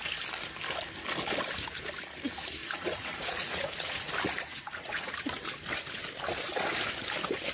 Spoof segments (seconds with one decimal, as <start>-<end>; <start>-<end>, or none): 2.6-4.1; 4.5-5.2